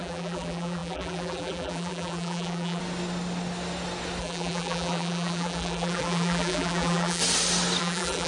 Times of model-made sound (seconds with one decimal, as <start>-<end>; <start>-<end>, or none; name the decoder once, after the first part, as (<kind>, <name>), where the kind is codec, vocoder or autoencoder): 0.0-2.8 (vocoder, BigVGAN v2); 4.2-7.2; 7.8-8.3